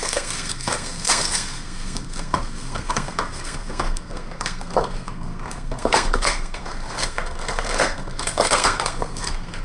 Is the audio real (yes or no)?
no